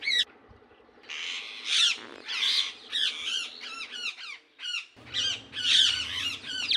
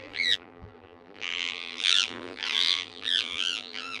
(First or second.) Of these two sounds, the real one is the first